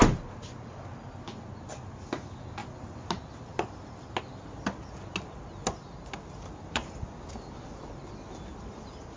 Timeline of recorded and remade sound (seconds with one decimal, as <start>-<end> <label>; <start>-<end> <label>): 0.0-9.2 recorded